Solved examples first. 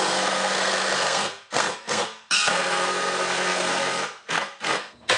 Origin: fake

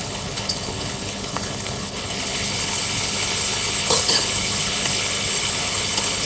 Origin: fake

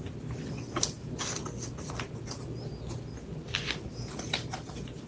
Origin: real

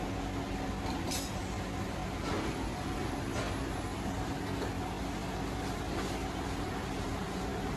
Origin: real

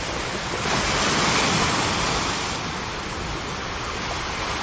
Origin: real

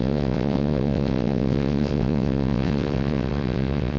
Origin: fake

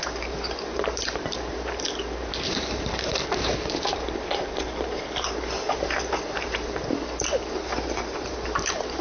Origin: fake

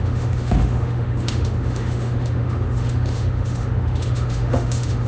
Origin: fake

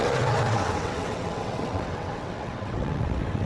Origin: fake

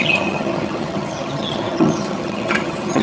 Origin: fake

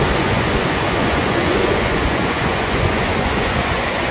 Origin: fake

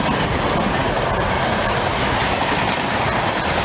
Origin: real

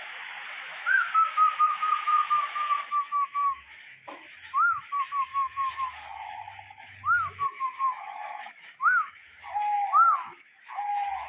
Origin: fake